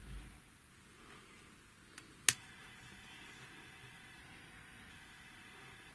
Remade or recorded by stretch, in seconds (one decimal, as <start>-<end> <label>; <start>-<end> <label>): 0.0-4.2 recorded; 4.2-4.9 remade; 4.9-5.9 recorded